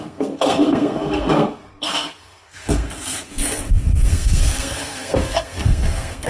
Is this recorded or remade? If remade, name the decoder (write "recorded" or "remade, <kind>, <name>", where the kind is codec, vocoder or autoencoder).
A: remade, codec, SNAC